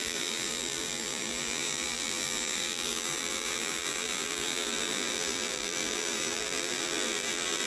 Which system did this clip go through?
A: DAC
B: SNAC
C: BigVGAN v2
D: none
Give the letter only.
C